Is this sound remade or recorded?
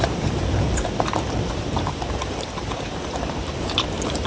remade